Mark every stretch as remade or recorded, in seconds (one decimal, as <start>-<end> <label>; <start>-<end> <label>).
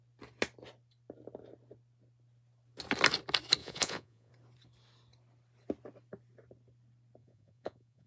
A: 0.0-3.6 recorded; 3.6-4.3 remade; 4.3-7.2 recorded; 7.2-8.1 remade